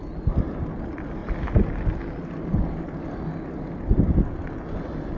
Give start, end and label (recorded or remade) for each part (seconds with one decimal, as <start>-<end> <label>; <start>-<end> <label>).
0.0-5.2 recorded